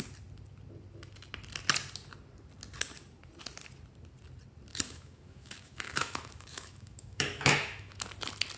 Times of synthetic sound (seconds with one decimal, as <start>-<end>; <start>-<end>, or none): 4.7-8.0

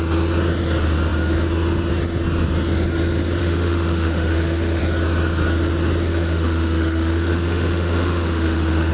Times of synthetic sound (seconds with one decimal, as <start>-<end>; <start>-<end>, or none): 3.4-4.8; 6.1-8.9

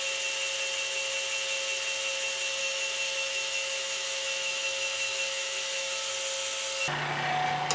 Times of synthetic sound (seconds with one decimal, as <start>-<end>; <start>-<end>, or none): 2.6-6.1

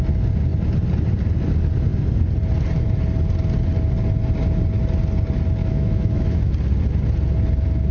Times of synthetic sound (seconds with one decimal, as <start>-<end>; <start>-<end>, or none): 5.6-6.5

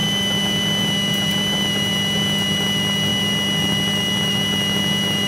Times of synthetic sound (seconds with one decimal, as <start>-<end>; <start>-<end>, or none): none